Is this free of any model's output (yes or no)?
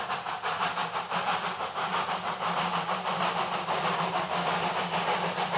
yes